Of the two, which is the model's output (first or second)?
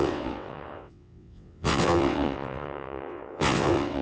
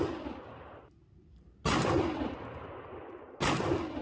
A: first